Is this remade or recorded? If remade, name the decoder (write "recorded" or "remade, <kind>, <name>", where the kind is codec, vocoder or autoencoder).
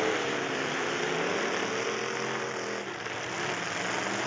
recorded